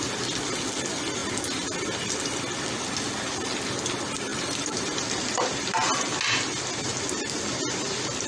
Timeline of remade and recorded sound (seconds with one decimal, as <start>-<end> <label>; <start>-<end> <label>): 0.0-4.3 recorded; 4.3-5.9 remade; 5.9-8.3 recorded